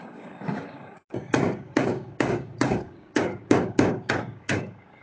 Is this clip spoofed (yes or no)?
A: yes